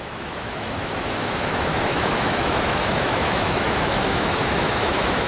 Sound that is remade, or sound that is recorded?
remade